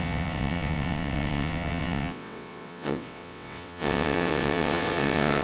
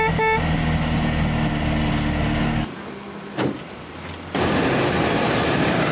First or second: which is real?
second